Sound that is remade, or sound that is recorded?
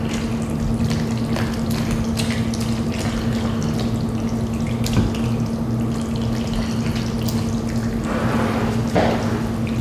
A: recorded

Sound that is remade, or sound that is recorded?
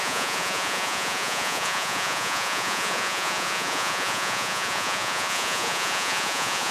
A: remade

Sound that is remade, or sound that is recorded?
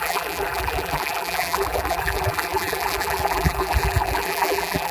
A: remade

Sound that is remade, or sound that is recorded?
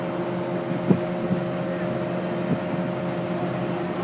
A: recorded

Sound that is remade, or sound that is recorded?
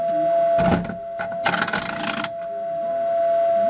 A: recorded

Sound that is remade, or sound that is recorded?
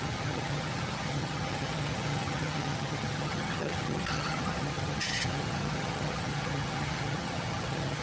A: remade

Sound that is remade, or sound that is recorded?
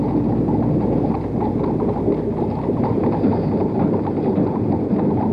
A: recorded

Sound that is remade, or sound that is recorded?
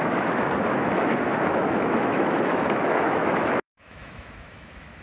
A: remade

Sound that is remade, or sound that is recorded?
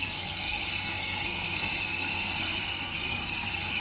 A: remade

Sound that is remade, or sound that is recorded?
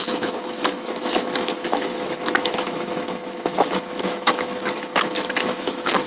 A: remade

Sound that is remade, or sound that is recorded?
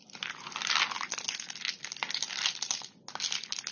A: recorded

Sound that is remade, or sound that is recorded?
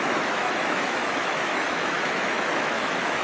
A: remade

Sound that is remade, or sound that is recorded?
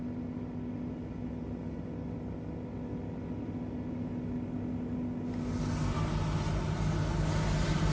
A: recorded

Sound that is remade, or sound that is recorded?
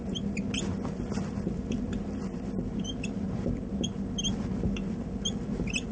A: remade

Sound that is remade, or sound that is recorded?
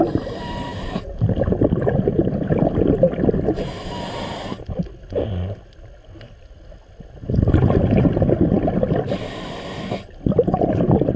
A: recorded